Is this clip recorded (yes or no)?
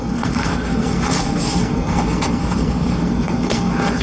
no